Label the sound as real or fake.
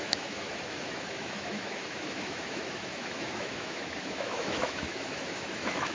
fake